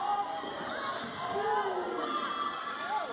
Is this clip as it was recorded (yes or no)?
yes